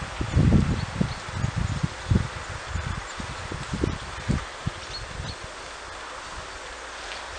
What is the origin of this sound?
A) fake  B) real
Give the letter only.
B